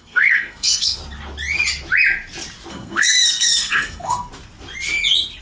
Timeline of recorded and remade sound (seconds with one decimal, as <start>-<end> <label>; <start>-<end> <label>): 0.0-1.0 remade; 1.0-2.7 recorded; 2.7-4.3 remade; 4.3-5.4 recorded

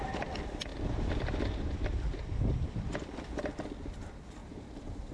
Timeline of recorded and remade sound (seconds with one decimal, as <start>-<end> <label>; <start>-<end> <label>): 0.0-5.1 recorded

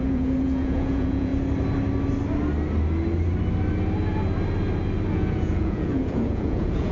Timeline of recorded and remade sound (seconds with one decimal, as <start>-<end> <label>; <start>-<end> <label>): 0.0-1.3 remade; 1.3-5.1 recorded; 5.1-6.9 remade

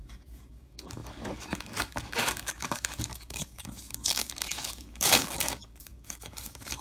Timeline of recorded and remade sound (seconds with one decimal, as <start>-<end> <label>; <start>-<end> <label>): 0.0-6.8 remade

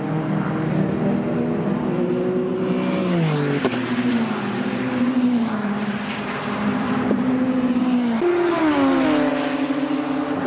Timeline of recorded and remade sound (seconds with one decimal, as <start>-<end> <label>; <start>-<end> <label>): 0.0-3.9 recorded; 3.9-7.8 remade; 7.8-10.5 recorded